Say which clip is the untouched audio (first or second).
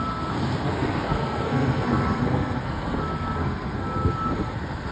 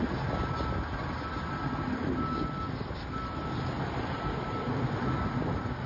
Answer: second